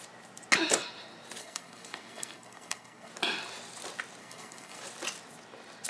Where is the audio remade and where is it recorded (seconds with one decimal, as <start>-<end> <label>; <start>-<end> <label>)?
0.0-1.4 recorded; 1.4-3.1 remade; 3.1-4.2 recorded; 4.2-4.8 remade; 4.8-5.9 recorded